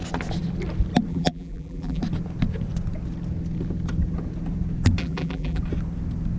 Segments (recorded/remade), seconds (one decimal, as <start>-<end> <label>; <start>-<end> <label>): 0.0-1.1 recorded; 1.1-2.0 remade; 2.0-5.0 recorded; 5.0-5.6 remade; 5.6-6.4 recorded